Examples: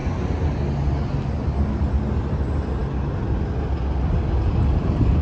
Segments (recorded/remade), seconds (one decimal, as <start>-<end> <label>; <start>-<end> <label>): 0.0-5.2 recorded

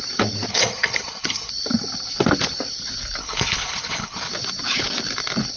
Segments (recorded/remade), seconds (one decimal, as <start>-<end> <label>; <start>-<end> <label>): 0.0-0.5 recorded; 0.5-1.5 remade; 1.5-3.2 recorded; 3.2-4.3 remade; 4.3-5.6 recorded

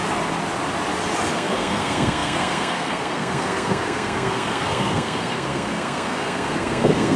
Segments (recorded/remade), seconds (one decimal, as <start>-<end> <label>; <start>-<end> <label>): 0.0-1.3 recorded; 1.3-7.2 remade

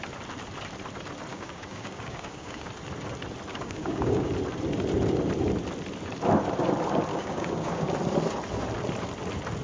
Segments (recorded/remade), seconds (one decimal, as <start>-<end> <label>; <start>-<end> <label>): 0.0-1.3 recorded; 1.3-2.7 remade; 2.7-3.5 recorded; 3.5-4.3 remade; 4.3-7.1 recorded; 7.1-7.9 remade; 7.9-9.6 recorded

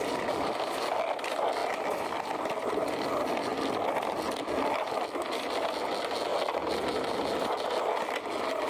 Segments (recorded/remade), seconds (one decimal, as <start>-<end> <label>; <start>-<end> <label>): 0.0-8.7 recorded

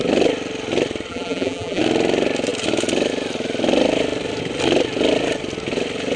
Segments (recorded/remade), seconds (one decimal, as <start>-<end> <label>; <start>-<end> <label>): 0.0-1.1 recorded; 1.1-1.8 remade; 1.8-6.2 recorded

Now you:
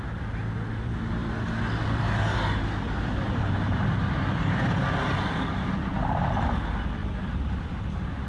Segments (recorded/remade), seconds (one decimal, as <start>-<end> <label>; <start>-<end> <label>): 0.0-7.0 recorded; 7.0-8.3 remade